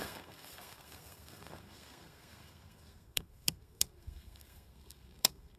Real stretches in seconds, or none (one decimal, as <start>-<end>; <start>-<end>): none